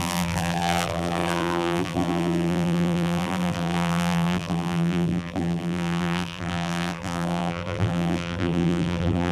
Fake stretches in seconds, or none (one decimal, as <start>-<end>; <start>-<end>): 0.0-9.3